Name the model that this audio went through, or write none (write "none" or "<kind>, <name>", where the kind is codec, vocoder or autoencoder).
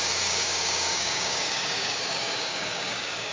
codec, DAC